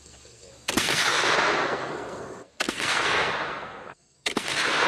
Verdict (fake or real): fake